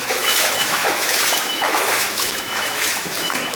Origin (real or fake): fake